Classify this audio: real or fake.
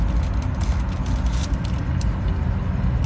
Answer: real